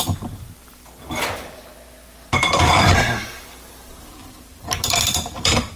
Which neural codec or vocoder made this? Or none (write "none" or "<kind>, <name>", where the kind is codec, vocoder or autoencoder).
vocoder, BigVGAN v2